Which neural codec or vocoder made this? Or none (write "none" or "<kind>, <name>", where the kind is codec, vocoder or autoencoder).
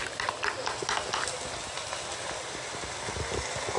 none